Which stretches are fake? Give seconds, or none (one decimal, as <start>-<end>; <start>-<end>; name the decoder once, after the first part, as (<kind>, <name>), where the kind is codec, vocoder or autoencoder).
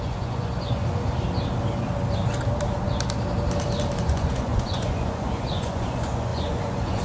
0.0-0.8 (vocoder, Vocos); 4.0-7.0